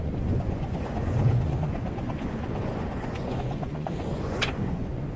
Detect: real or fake fake